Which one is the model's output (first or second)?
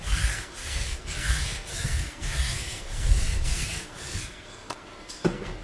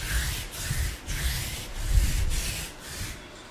first